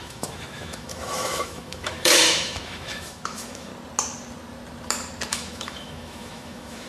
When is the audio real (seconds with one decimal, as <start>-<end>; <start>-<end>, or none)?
3.7-5.3

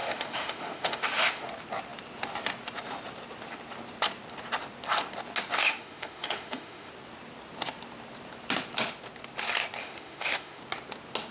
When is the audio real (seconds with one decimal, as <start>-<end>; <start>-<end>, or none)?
1.5-5.6; 6.9-9.8; 10.6-11.3

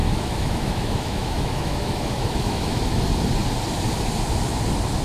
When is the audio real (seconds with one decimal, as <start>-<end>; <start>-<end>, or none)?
3.0-5.0

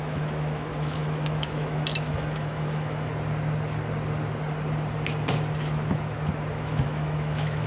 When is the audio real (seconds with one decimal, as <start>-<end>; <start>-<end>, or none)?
3.1-6.5

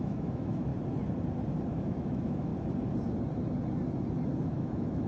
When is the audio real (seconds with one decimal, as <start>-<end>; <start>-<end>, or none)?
0.7-1.7; 2.5-4.4